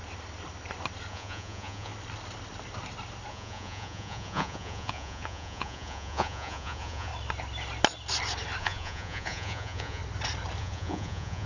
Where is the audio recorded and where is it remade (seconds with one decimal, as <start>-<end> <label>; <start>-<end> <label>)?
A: 0.0-1.1 recorded; 1.1-1.9 remade; 1.9-3.3 recorded; 3.3-7.1 remade; 7.1-8.6 recorded; 8.6-10.0 remade; 10.0-10.6 recorded; 10.6-11.5 remade